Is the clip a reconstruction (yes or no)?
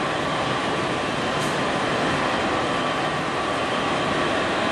no